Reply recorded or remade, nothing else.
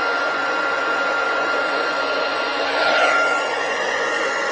remade